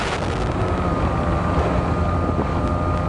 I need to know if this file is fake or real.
real